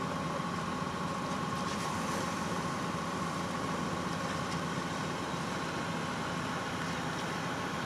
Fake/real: fake